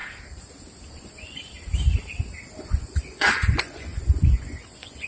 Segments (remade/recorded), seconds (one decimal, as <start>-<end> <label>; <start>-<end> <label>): 0.0-0.9 recorded; 0.9-1.4 remade; 1.4-2.6 recorded; 2.6-5.1 remade

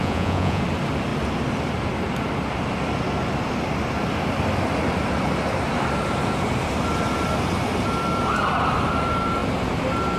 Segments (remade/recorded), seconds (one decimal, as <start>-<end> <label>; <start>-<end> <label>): 0.0-0.6 remade; 0.6-10.2 recorded